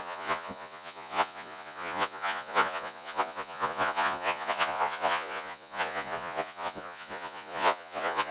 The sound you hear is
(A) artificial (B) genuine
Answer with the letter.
A